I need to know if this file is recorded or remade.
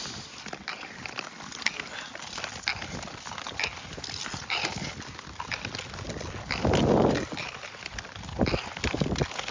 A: recorded